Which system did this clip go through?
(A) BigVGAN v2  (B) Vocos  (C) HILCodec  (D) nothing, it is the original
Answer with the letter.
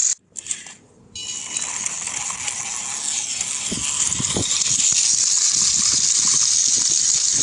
D